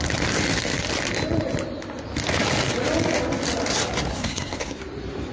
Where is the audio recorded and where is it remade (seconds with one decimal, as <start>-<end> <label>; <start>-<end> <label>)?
0.0-4.1 recorded; 4.1-4.8 remade; 4.8-5.3 recorded